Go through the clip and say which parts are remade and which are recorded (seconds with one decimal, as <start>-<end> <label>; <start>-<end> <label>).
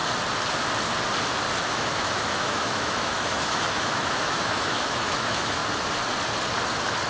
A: 0.0-1.7 recorded; 1.7-5.6 remade; 5.6-7.1 recorded